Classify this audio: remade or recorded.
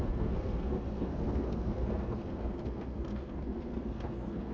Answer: remade